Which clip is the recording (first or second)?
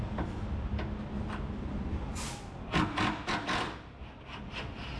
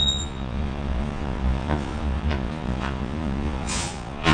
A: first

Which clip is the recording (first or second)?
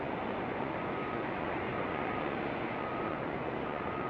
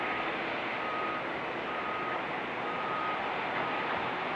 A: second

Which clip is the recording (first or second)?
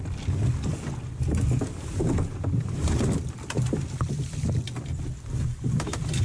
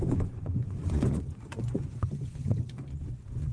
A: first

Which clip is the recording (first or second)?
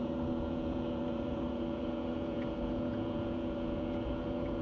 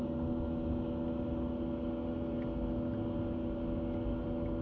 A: second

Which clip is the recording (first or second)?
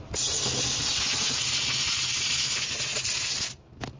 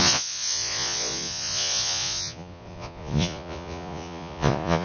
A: first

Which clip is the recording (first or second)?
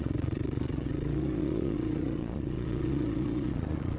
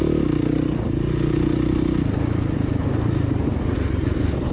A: second